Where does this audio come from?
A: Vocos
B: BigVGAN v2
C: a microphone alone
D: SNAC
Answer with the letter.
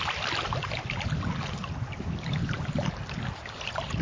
C